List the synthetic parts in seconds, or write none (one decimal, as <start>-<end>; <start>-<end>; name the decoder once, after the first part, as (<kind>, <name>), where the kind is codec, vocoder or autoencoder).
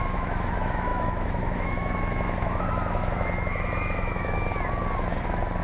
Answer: 0.0-4.5 (autoencoder, DAC-VAE)